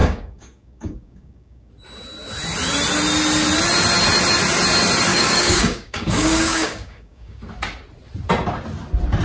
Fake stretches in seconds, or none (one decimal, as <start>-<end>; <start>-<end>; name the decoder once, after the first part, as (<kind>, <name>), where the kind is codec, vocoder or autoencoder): 0.0-1.7 (codec, DAC); 5.1-7.4